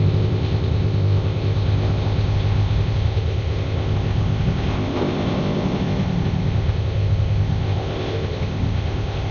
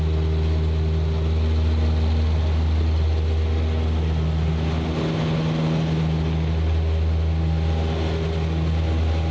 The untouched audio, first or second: second